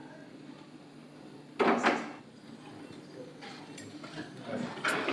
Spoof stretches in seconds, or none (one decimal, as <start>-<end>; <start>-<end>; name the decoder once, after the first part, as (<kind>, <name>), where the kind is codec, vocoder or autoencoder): none